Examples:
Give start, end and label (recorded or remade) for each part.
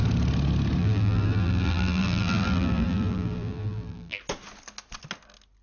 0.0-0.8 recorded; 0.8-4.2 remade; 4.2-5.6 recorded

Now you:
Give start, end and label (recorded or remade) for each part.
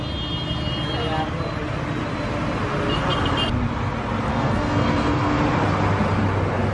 0.0-4.3 recorded; 4.3-5.4 remade; 5.4-6.7 recorded